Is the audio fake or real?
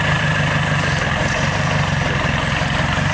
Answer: real